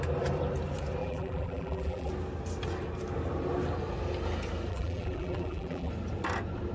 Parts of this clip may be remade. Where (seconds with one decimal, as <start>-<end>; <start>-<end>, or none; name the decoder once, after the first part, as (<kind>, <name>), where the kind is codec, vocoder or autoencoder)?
1.0-2.1 (vocoder, BigVGAN v2); 4.7-5.9